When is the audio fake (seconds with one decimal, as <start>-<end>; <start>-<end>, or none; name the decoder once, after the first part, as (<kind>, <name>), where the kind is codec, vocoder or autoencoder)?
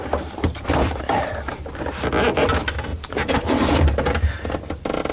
0.0-1.5 (vocoder, BigVGAN v2); 2.9-3.9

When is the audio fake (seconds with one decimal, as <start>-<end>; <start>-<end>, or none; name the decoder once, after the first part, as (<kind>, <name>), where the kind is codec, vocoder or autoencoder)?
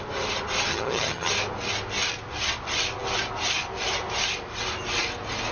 0.7-1.3 (vocoder, HiFi-GAN)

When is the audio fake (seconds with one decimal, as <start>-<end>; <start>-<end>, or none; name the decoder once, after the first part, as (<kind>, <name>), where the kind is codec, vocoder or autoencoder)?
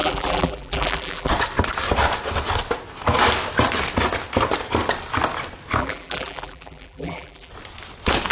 0.0-1.3 (vocoder, BigVGAN v2); 5.8-7.5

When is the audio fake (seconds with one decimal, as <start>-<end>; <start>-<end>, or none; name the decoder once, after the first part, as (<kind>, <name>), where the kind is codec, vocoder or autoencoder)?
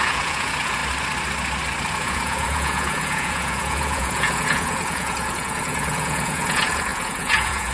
0.0-0.8 (vocoder, Vocos); 1.9-7.7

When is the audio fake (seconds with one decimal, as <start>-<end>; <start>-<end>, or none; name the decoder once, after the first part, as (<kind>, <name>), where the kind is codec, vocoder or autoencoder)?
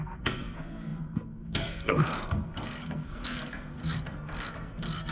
0.0-5.1 (codec, SNAC)